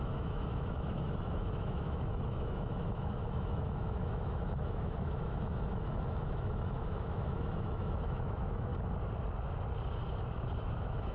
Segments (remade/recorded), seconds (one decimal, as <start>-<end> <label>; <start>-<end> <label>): 0.0-8.7 remade; 8.7-10.6 recorded; 10.6-11.1 remade